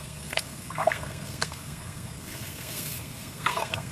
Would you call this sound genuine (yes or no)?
no